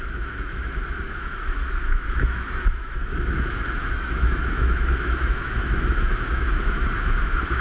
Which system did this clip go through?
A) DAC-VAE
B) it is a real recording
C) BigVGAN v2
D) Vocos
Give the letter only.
A